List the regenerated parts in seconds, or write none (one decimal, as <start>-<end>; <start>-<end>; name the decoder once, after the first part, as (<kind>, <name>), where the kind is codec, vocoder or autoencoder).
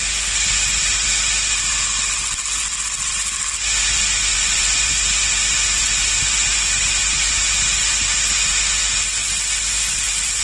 4.3-4.9 (vocoder, Vocos)